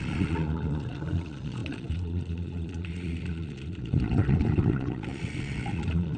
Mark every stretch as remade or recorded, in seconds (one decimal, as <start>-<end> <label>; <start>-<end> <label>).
0.0-6.2 remade